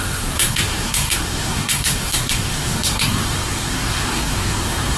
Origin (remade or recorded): remade